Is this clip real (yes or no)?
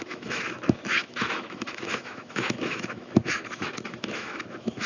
no